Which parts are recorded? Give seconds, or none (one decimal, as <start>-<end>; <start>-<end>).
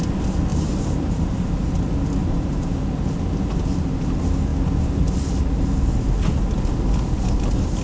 0.0-0.5; 1.5-2.2; 3.0-7.8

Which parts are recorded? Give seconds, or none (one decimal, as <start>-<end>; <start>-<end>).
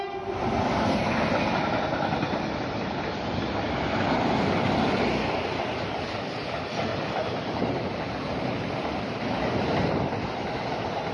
0.0-6.9; 9.2-11.1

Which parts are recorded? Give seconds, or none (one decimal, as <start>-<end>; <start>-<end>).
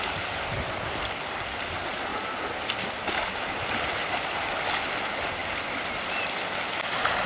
0.0-2.1; 2.8-5.4; 6.7-7.3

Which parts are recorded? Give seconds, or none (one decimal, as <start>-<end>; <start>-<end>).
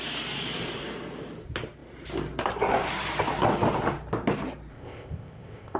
0.0-4.7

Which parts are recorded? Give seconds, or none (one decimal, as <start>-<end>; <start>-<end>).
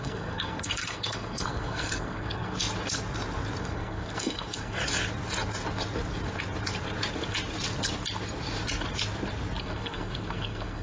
2.6-3.6; 4.8-9.6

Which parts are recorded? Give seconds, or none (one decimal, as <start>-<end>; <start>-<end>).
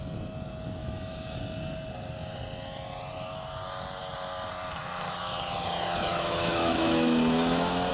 0.0-0.8; 1.4-6.1